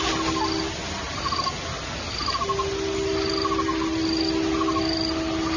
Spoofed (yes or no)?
no